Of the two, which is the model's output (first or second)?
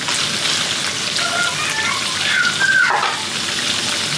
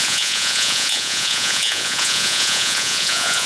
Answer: second